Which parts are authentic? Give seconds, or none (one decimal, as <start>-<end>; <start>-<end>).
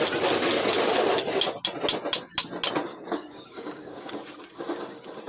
0.0-2.9; 4.1-5.3